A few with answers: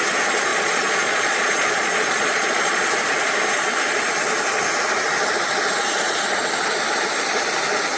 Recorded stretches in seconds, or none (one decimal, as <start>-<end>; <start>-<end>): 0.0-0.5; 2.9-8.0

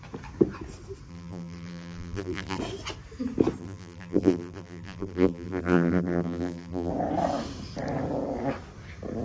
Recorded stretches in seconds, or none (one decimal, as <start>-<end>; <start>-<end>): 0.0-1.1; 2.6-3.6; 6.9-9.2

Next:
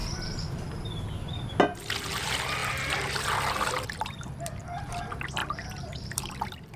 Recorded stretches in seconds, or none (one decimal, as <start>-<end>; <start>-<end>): 1.6-5.4; 6.3-6.8

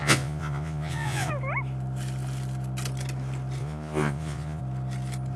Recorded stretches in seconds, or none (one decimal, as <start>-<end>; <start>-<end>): 1.3-3.6; 4.6-5.4

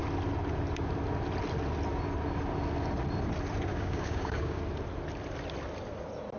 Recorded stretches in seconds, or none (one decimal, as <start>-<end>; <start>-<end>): 0.0-3.7; 4.6-6.4

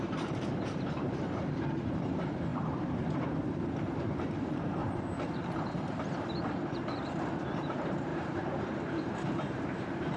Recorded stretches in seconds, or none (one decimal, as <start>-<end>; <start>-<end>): none

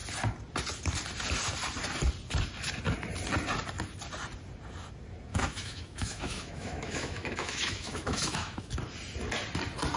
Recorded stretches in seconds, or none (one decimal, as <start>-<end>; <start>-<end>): 0.0-5.3; 8.7-10.0